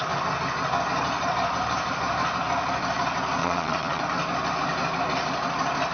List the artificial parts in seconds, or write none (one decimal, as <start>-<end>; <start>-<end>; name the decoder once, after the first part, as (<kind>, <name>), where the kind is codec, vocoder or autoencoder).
3.4-4.0 (vocoder, Vocos)